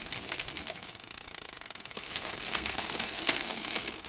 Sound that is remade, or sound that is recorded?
remade